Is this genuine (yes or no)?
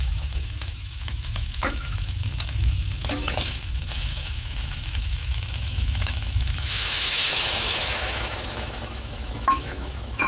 no